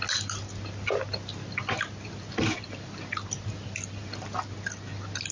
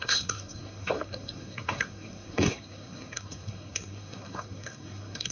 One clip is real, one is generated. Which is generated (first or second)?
second